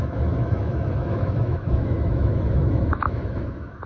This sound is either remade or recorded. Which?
remade